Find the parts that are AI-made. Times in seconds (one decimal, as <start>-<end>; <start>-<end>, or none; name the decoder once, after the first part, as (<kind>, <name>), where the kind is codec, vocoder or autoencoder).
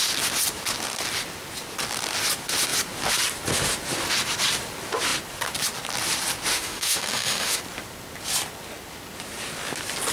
6.5-7.6 (autoencoder, DAC-VAE)